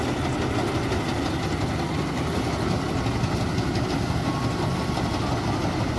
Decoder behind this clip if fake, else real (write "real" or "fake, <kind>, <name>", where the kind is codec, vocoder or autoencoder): real